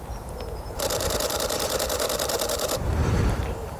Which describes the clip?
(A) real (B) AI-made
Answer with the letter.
B